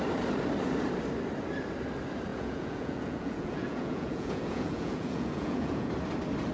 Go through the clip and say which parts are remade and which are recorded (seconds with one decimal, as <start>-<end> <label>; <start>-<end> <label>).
0.0-2.3 recorded; 2.3-5.9 remade; 5.9-6.5 recorded